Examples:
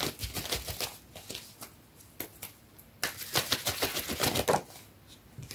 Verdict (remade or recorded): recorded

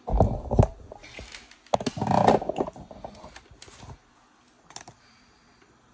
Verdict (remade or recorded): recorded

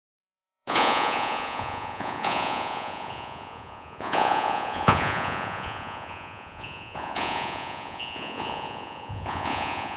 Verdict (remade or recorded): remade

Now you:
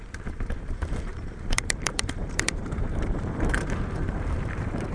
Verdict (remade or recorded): remade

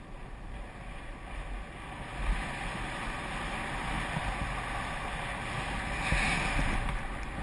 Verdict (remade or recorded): recorded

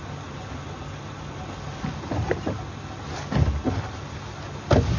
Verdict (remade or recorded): recorded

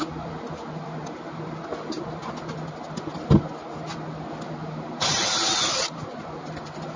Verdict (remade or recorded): recorded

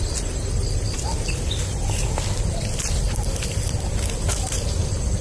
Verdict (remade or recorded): remade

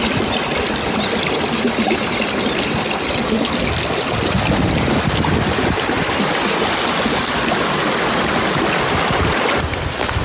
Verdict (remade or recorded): recorded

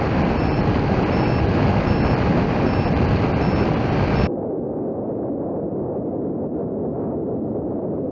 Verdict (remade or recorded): recorded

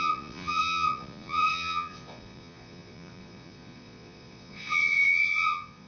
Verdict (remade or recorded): remade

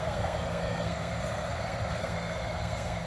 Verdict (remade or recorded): remade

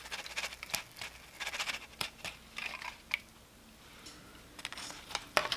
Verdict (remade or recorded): recorded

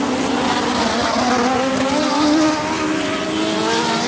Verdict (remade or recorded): recorded